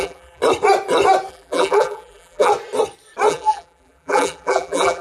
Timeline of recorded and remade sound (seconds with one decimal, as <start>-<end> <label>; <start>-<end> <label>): 0.0-0.4 remade; 0.4-1.3 recorded; 1.3-2.5 remade; 2.5-3.3 recorded; 3.3-5.0 remade